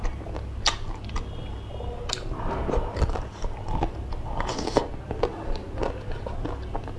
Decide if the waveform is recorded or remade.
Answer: recorded